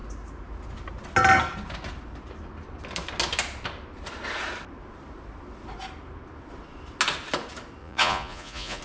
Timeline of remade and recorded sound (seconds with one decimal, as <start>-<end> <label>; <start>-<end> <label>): 0.0-7.8 recorded; 7.8-8.8 remade